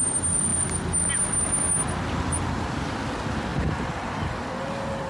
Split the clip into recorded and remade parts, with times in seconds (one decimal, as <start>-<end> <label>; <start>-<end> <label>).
0.0-5.1 recorded